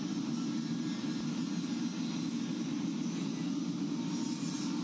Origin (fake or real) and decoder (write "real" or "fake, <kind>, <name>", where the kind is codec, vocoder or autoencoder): real